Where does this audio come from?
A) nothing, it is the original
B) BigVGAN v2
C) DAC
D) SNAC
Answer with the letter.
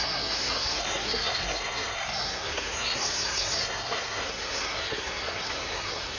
D